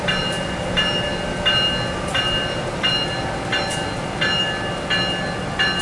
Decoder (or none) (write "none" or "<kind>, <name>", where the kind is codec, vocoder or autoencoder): none